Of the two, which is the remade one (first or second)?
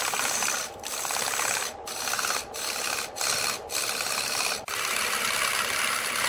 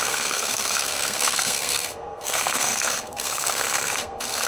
second